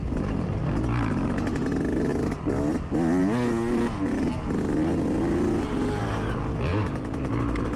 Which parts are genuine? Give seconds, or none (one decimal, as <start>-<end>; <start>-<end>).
0.0-6.7; 7.3-7.8